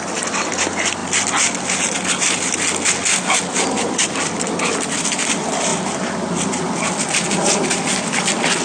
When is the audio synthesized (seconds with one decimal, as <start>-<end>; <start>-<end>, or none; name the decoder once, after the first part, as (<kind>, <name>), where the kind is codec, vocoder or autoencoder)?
none